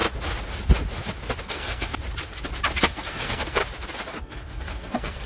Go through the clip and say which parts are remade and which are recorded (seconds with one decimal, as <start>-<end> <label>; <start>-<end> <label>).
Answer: 0.0-1.4 recorded; 1.4-1.9 remade; 1.9-2.8 recorded; 2.8-3.6 remade; 3.6-4.2 recorded; 4.2-5.3 remade